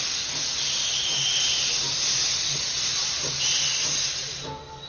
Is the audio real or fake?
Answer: real